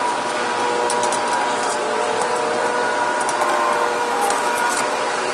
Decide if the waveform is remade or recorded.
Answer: recorded